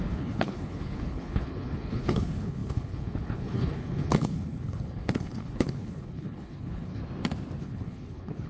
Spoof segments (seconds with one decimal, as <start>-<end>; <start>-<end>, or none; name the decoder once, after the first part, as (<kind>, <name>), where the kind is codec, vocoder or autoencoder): 0.0-7.0 (codec, HILCodec); 7.6-8.5